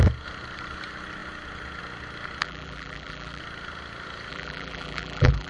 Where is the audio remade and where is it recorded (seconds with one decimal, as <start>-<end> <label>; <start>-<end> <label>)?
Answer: 0.0-2.4 recorded; 2.4-3.4 remade; 3.4-4.3 recorded; 4.3-5.5 remade

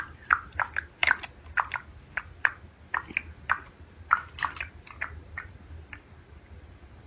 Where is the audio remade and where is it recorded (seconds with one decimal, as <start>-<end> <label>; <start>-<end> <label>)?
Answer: 0.0-7.1 recorded

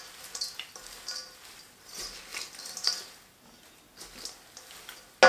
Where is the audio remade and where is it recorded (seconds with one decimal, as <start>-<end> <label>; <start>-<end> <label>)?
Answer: 0.0-2.3 recorded; 2.3-3.6 remade; 3.6-5.3 recorded

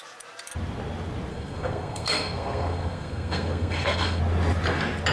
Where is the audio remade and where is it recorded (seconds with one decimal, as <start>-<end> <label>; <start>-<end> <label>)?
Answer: 0.0-1.3 recorded; 1.3-4.2 remade; 4.2-5.1 recorded

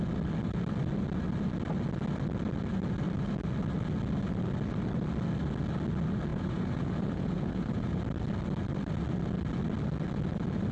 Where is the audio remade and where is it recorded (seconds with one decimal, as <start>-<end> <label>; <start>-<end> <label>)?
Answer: 0.0-6.3 recorded; 6.3-8.0 remade; 8.0-10.7 recorded

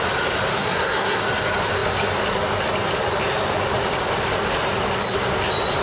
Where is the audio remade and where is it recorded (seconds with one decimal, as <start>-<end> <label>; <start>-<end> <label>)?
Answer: 0.0-0.5 recorded; 0.5-1.2 remade; 1.2-5.8 recorded

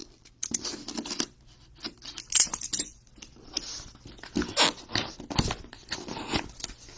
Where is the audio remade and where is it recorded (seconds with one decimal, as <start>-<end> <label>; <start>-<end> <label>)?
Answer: 0.0-7.0 recorded

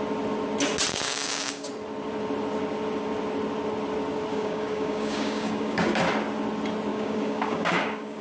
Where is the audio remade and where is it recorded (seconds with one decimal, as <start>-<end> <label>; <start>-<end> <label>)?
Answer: 0.0-0.9 recorded; 0.9-1.7 remade; 1.7-4.3 recorded; 4.3-6.0 remade; 6.0-6.9 recorded; 6.9-8.2 remade